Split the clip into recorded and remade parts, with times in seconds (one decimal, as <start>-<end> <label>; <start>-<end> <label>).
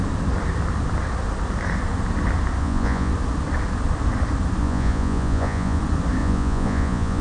0.0-2.6 recorded; 2.6-3.1 remade; 3.1-4.6 recorded; 4.6-5.8 remade; 5.8-6.2 recorded; 6.2-7.2 remade